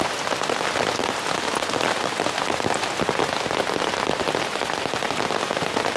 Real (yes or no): yes